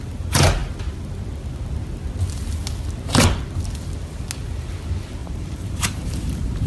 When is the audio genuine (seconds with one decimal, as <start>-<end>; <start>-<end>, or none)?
0.0-5.2

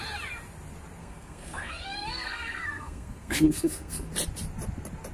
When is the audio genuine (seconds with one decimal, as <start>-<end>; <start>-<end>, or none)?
0.0-1.0; 4.1-5.1

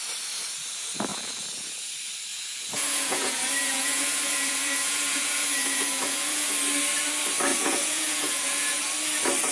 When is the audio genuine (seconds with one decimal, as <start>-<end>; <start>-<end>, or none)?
0.0-1.1; 1.9-2.3; 6.5-7.5; 8.8-9.5

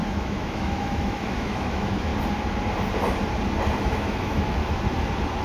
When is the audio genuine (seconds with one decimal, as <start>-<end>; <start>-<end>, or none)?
2.1-3.8; 4.6-5.4

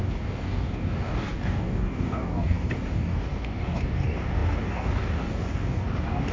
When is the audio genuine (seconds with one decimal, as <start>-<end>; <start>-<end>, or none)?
none

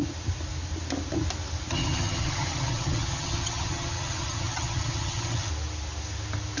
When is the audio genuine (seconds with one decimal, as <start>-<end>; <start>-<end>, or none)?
0.0-1.7; 5.5-6.6

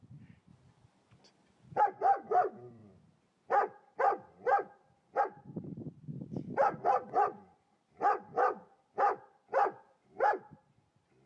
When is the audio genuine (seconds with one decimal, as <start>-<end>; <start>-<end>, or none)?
0.0-11.3

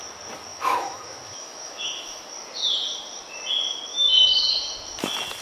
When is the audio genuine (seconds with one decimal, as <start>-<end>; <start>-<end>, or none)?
0.0-0.5; 2.2-3.9; 4.5-5.4